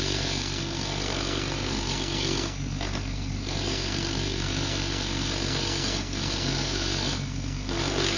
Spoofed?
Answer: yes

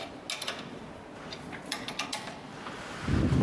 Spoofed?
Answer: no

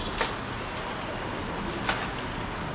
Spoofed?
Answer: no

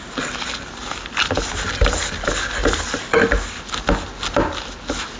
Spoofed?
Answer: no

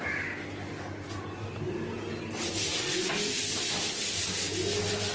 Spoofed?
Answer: no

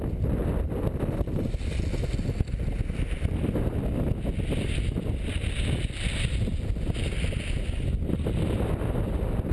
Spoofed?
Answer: no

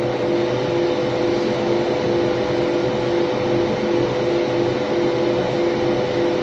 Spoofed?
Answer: no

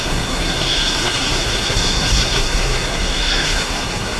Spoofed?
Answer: yes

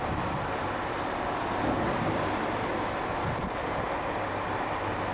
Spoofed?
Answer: no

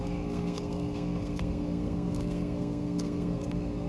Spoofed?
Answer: yes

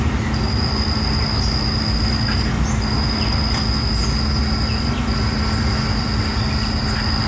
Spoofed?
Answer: no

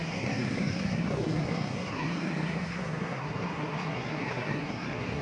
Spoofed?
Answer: yes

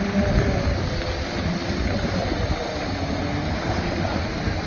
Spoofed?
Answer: no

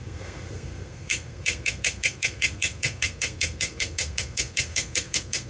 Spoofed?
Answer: yes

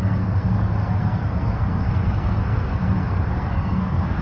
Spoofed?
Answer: yes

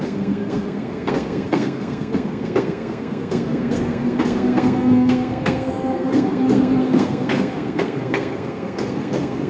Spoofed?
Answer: yes